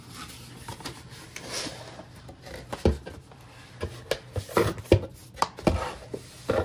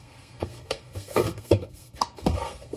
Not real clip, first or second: second